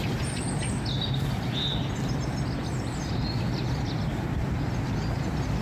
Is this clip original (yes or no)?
yes